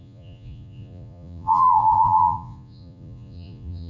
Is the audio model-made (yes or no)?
yes